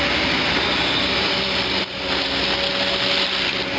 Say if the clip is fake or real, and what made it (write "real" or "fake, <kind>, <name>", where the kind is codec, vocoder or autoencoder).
real